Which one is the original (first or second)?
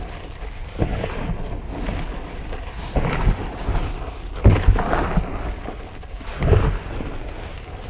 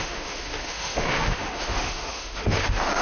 first